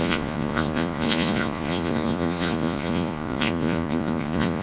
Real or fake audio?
fake